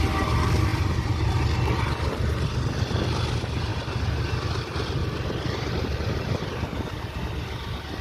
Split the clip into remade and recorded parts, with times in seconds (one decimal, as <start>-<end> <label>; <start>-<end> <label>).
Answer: 0.0-8.0 recorded